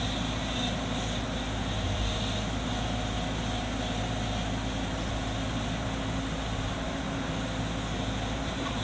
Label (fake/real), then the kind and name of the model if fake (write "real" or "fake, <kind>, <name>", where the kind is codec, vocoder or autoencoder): real